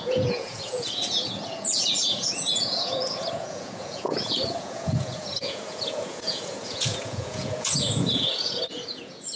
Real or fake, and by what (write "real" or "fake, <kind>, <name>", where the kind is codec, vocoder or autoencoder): fake, vocoder, Vocos